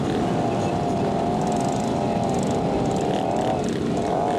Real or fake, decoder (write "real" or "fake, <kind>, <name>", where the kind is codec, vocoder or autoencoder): real